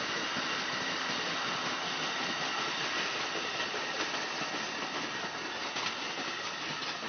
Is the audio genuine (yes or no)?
yes